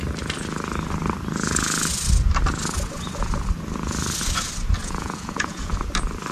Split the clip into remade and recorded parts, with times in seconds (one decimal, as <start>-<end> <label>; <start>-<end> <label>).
0.0-4.8 recorded; 4.8-5.7 remade; 5.7-6.3 recorded